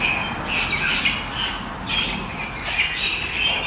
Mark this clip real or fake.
real